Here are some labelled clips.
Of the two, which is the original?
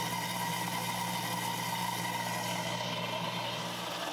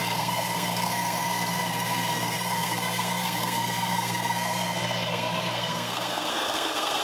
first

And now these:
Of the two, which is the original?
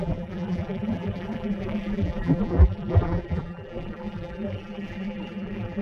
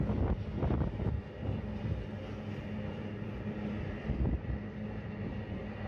second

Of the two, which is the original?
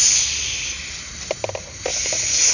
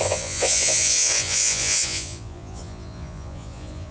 first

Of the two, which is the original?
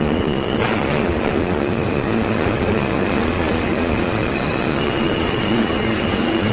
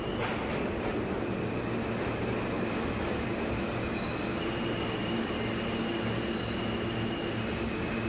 second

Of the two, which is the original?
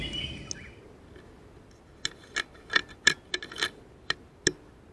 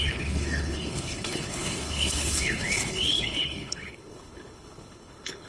first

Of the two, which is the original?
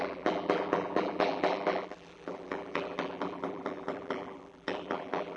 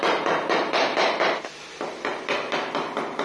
second